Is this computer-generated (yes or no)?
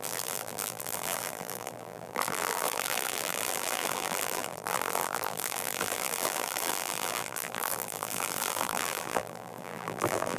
yes